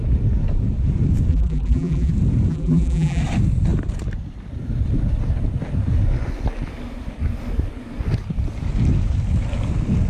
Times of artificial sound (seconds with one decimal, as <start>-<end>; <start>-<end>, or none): 1.3-2.1; 2.5-3.2